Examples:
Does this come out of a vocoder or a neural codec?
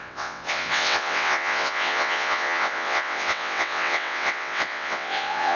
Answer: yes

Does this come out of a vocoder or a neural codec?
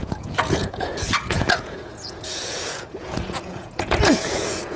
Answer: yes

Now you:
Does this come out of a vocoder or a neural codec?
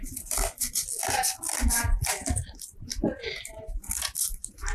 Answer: no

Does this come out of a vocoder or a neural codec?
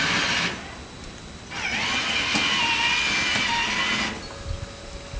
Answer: no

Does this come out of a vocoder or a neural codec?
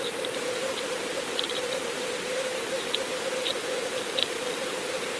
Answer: yes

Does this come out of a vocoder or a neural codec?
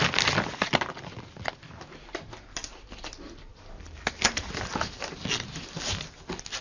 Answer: no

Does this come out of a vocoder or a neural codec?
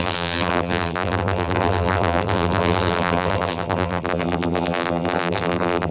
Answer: yes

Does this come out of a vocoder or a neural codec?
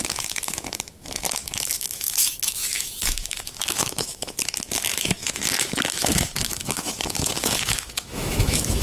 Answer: yes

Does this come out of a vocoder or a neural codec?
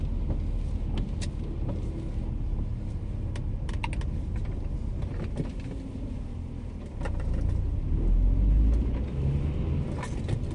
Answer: no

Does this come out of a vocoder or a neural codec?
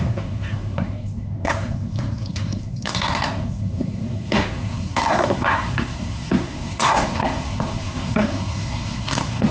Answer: yes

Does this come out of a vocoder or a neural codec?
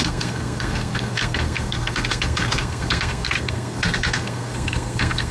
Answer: yes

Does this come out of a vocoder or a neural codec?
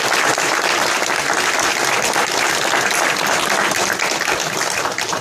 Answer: no